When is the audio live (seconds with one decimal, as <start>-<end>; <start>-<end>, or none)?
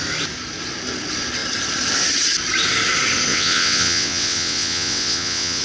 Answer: 0.0-3.3